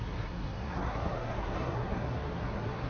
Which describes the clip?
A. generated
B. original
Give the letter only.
A